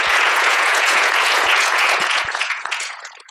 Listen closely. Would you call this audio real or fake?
fake